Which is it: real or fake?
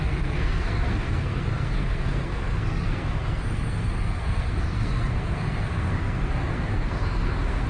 fake